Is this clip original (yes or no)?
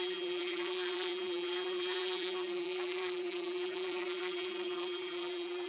no